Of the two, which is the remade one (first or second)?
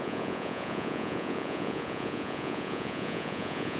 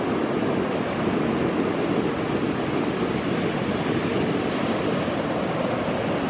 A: first